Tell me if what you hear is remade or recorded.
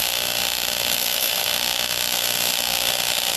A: remade